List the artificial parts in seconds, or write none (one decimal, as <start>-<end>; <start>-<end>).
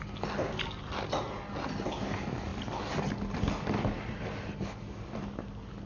none